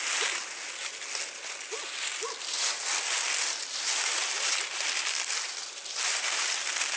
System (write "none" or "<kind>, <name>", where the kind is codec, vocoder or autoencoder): none